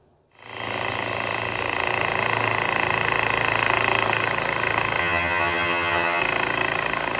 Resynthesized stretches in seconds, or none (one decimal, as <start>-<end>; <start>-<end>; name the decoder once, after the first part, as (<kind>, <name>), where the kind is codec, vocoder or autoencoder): 5.0-6.2 (vocoder, HiFi-GAN)